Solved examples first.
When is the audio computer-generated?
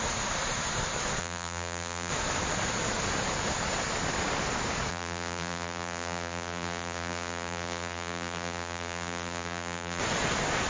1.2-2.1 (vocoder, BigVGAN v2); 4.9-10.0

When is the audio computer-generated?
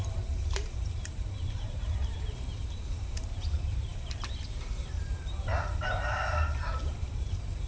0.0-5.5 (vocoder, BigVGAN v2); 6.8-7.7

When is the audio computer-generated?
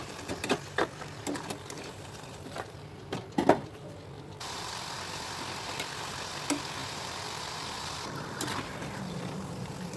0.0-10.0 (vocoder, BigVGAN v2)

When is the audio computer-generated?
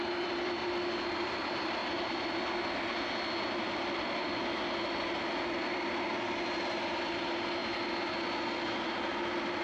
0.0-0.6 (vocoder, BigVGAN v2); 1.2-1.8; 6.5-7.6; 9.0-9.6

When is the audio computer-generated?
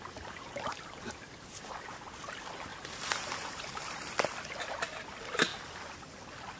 0.7-1.4 (vocoder, BigVGAN v2); 2.7-4.2